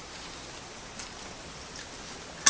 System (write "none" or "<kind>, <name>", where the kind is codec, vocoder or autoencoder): none